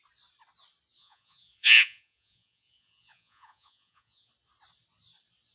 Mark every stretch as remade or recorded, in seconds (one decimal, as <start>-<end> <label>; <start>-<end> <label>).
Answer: 0.0-1.0 recorded; 1.0-4.3 remade; 4.3-5.5 recorded